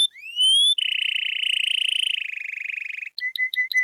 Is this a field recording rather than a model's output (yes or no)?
yes